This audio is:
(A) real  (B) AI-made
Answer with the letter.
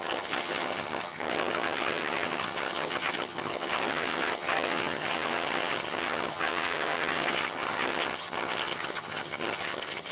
B